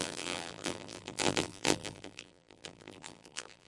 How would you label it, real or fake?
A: fake